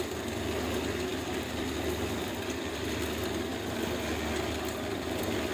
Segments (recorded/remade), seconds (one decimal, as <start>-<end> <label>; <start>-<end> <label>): 0.0-5.5 recorded